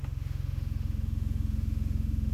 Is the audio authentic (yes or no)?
no